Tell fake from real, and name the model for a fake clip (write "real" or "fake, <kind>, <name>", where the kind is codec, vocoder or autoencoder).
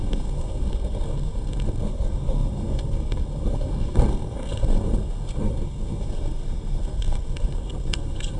fake, codec, SNAC